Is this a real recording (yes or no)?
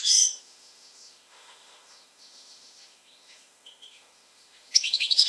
no